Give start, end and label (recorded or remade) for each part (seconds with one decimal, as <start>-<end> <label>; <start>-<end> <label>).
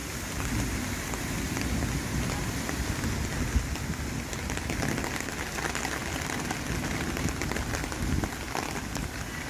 0.0-9.5 recorded